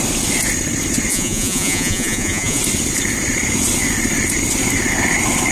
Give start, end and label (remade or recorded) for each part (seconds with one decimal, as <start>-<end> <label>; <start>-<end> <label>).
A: 0.0-1.1 recorded; 1.1-2.6 remade; 2.6-5.5 recorded